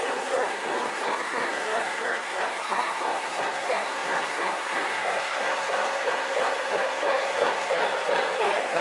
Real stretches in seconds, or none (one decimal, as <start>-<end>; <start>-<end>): 7.8-8.4